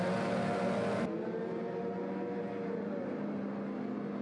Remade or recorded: recorded